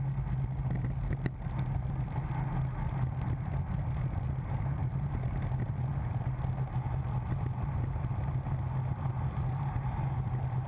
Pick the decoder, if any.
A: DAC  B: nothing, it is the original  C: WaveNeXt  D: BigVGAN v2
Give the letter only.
B